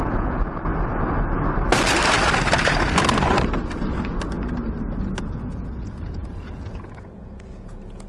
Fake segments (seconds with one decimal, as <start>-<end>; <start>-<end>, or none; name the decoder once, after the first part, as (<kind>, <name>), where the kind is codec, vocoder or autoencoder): 0.0-0.7 (vocoder, Vocos); 5.2-8.1